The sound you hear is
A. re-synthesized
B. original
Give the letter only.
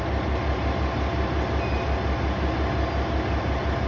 B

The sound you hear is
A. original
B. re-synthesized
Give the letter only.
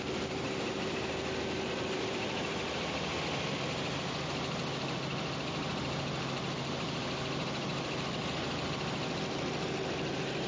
A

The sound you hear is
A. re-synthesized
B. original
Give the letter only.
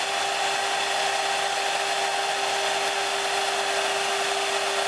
B